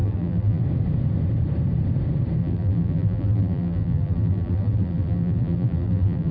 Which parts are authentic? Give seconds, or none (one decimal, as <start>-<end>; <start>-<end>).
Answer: 0.6-2.4